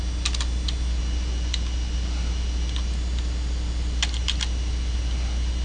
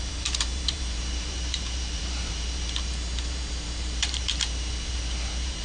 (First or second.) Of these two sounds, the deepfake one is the second